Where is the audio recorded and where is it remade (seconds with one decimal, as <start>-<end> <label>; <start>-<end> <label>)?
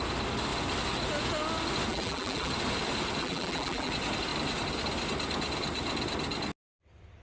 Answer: 0.0-1.9 recorded; 1.9-2.5 remade; 2.5-3.2 recorded; 3.2-3.9 remade; 3.9-7.2 recorded